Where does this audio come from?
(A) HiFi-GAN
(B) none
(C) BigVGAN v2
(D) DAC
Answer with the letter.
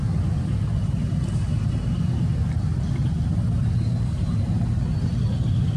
B